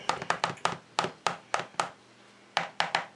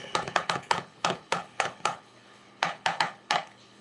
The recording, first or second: first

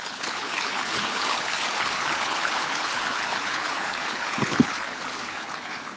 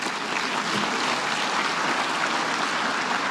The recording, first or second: second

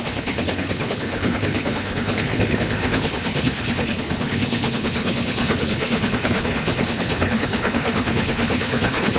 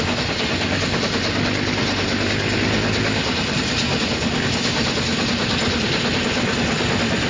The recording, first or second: second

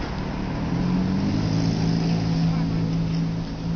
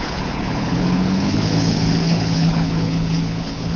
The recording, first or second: first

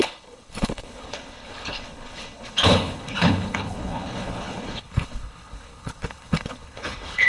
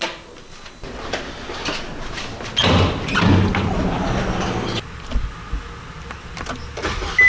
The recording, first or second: second